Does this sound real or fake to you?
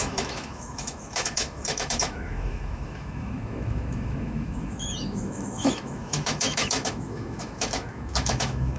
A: fake